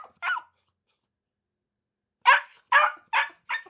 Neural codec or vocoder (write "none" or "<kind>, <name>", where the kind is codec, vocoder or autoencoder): none